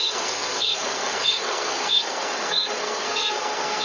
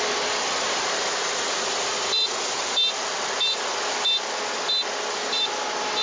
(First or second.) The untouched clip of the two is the second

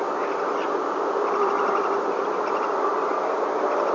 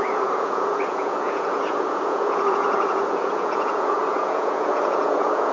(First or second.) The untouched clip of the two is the first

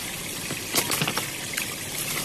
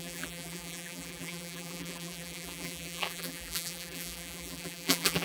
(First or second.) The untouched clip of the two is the first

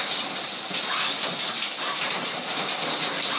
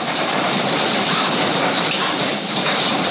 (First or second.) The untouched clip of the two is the first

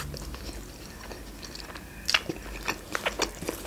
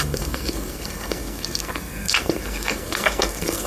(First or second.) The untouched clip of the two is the first